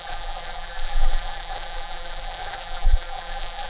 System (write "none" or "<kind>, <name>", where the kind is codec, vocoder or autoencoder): vocoder, BigVGAN v2